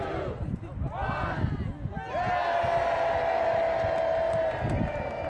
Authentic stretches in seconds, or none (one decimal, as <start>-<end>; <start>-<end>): 0.0-5.3